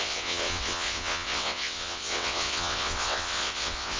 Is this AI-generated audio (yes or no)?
yes